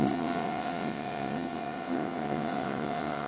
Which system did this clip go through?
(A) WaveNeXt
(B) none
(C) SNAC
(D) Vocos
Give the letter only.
A